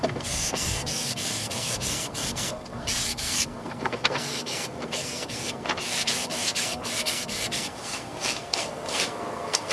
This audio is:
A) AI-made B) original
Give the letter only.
A